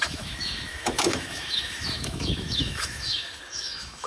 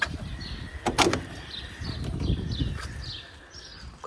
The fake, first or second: first